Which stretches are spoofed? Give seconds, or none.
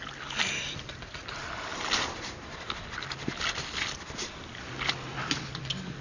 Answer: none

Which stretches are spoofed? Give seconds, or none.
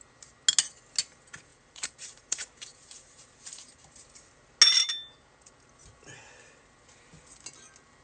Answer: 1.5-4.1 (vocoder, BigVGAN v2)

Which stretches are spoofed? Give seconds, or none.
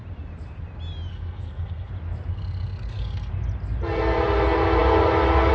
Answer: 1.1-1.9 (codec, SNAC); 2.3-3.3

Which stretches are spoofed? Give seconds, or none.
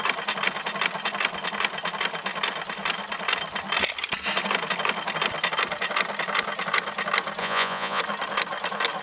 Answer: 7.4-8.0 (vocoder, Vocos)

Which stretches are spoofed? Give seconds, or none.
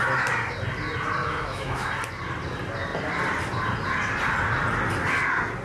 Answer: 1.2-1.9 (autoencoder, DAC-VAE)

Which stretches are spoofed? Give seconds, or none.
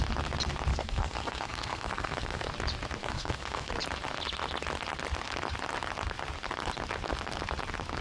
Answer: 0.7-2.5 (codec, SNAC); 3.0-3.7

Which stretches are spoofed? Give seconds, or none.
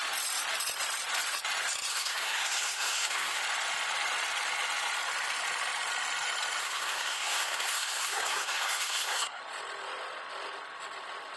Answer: 1.9-3.4 (codec, SNAC); 6.6-9.4